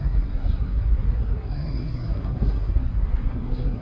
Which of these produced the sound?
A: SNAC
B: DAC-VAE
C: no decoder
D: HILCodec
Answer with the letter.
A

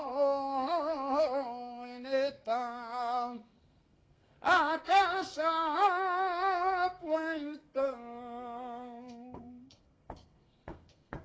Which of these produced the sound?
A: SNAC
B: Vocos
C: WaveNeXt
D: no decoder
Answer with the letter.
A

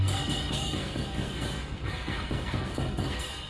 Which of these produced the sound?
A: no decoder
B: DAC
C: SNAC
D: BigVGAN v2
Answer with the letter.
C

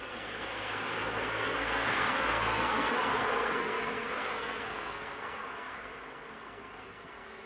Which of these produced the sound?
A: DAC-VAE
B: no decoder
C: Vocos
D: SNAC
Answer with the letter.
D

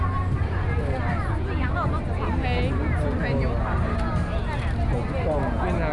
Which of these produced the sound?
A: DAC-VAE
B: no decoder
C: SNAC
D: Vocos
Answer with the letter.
B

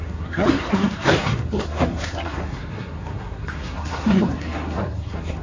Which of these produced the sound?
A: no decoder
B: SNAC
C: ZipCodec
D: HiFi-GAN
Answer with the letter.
B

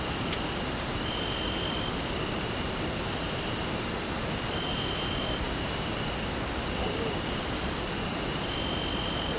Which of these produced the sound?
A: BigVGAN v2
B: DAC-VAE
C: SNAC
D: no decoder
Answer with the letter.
D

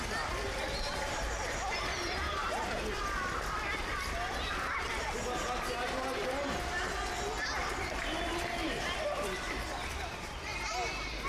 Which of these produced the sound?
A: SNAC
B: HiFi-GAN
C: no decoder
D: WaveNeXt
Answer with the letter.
C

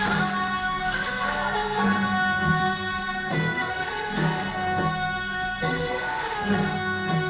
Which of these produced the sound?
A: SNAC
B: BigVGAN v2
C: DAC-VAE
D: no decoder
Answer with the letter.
A